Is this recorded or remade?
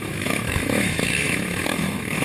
remade